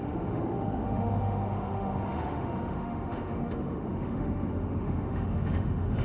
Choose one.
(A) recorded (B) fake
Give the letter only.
B